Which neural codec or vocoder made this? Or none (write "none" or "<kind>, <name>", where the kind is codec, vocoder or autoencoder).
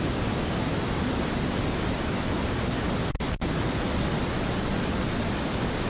none